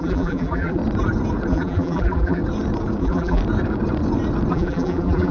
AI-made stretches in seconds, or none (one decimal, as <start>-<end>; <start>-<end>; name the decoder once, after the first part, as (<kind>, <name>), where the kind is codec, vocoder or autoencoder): 0.0-0.8 (vocoder, BigVGAN v2); 1.5-2.4; 3.0-3.4; 4.5-5.3